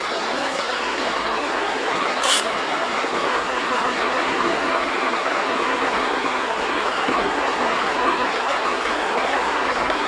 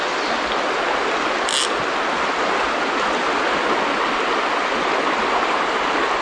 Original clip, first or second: second